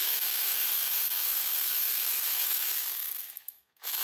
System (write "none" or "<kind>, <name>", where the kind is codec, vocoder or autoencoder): codec, SNAC